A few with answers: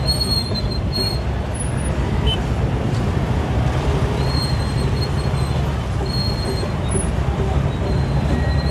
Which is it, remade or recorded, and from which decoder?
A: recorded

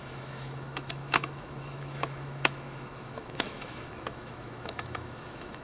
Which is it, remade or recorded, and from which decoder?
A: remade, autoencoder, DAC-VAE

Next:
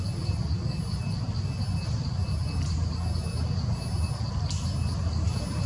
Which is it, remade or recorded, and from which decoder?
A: recorded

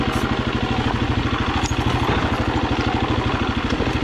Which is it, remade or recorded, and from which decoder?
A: recorded